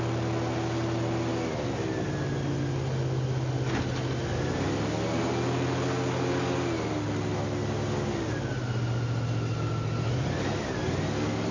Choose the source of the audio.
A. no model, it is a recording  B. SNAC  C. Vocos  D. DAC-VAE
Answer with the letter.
A